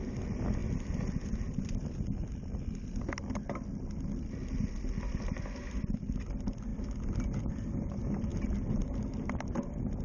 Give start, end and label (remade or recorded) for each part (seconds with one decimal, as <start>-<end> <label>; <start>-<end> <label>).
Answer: 0.0-10.0 recorded